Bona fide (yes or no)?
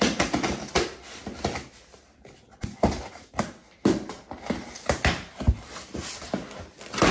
yes